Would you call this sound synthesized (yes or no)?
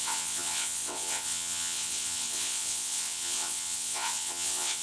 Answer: yes